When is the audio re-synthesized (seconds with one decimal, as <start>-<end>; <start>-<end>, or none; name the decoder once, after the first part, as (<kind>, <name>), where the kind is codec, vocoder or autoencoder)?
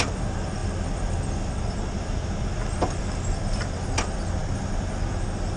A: none